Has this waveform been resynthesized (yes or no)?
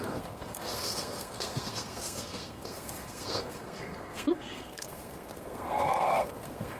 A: yes